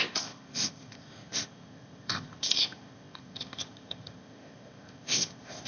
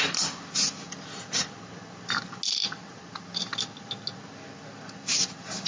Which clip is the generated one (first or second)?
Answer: first